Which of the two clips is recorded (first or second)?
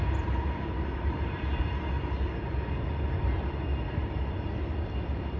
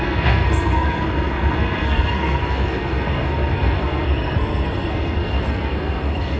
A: first